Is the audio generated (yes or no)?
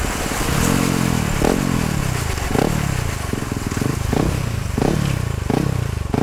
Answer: no